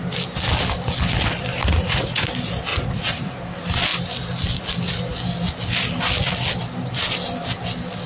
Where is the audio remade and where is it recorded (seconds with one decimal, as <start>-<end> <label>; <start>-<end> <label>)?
0.0-1.6 recorded; 1.6-2.3 remade; 2.3-2.7 recorded; 2.7-3.4 remade; 3.4-8.1 recorded